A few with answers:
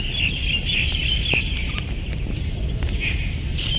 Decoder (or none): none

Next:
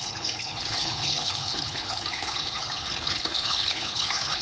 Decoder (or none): codec, HILCodec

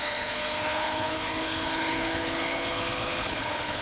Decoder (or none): codec, HILCodec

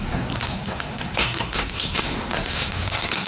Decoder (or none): codec, SNAC